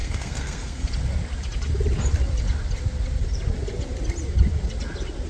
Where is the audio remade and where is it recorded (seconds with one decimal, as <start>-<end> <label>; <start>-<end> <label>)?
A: 0.0-0.9 remade; 0.9-5.3 recorded